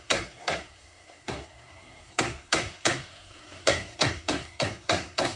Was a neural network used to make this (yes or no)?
yes